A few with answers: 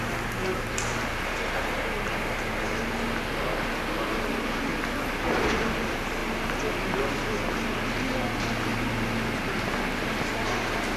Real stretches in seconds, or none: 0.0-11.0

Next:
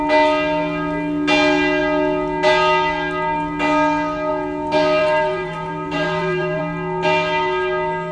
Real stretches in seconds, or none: 0.0-5.0; 6.6-8.1

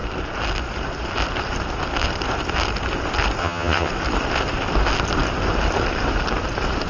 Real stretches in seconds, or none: 0.0-3.4; 3.9-6.9

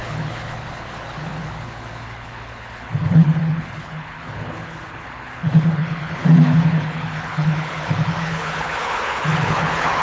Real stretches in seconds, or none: none